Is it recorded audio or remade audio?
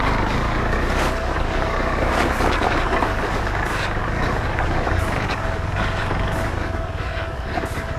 remade